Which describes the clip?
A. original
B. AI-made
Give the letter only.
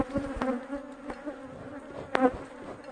A